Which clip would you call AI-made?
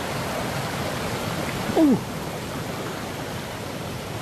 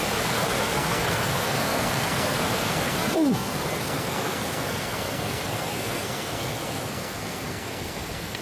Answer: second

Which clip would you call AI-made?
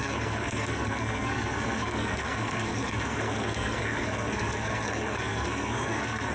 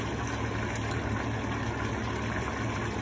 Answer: first